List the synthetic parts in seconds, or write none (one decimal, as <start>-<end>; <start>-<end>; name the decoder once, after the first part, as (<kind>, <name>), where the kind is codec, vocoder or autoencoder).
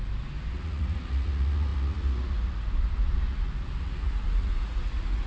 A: 0.5-5.3 (vocoder, Vocos)